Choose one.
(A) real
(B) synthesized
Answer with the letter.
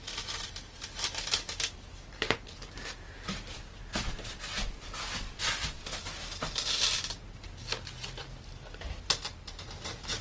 A